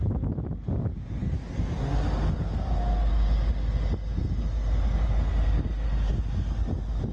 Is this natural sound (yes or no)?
yes